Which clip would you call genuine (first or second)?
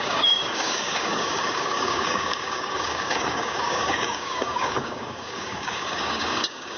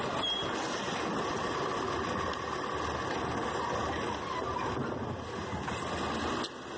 second